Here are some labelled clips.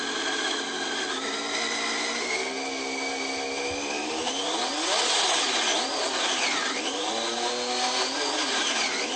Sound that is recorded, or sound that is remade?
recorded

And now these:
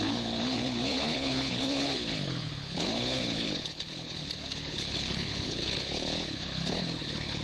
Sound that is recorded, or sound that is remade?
remade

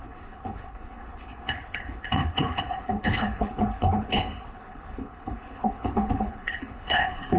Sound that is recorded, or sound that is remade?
remade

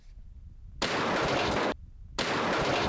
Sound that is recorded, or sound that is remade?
recorded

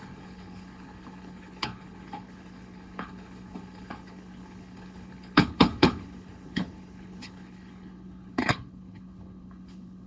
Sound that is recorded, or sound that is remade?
remade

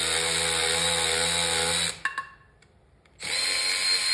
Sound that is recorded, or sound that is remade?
recorded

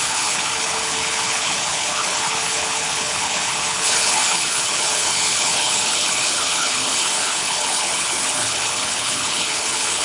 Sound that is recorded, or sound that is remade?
remade